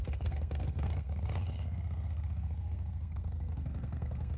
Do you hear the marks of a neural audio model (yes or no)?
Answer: yes